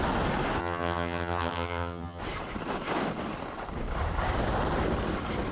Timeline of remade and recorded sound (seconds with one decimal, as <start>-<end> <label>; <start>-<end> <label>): 0.0-0.6 recorded; 0.6-2.2 remade; 2.2-5.5 recorded